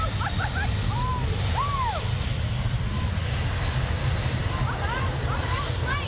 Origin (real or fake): real